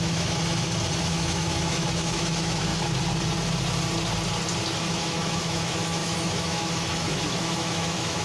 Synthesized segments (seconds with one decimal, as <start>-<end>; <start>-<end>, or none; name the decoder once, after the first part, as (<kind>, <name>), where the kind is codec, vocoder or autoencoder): 0.0-0.4 (autoencoder, DAC-VAE); 1.0-2.7; 4.8-8.2